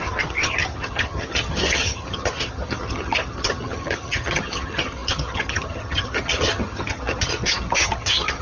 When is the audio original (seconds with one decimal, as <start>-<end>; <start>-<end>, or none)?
none